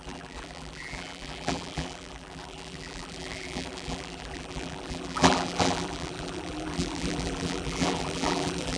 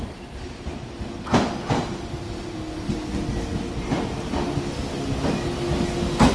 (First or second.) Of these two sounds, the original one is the second